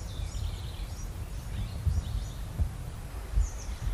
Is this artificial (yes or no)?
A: no